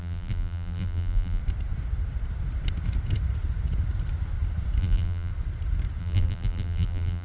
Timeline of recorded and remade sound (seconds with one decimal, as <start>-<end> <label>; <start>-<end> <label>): 0.0-1.4 remade; 1.4-4.8 recorded; 4.8-5.3 remade; 5.3-6.0 recorded; 6.0-7.2 remade